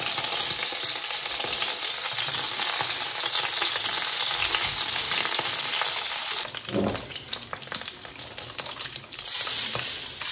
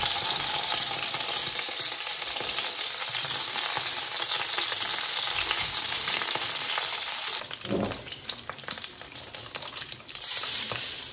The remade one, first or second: second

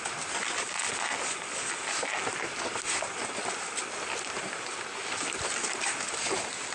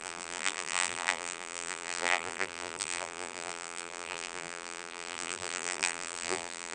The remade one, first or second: second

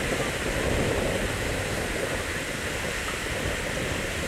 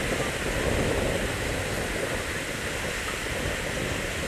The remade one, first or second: first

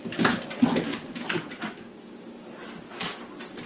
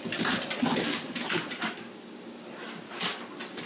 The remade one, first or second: second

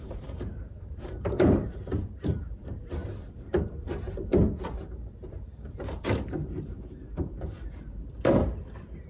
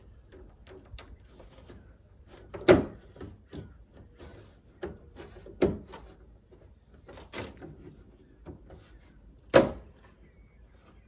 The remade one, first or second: first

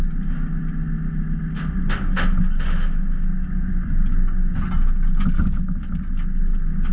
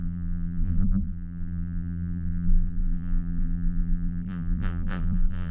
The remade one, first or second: second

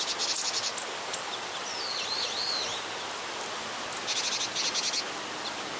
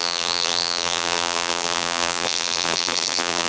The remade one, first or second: second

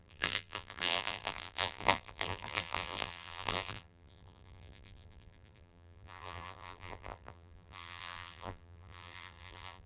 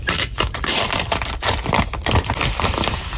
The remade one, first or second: first